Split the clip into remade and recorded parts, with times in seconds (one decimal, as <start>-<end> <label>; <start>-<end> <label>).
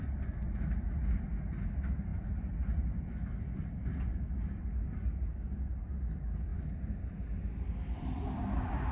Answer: 0.0-2.1 recorded; 2.1-3.0 remade; 3.0-8.9 recorded